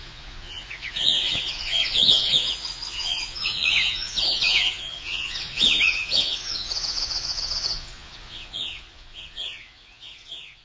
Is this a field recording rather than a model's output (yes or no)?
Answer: no